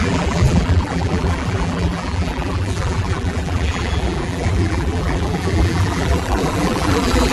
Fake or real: fake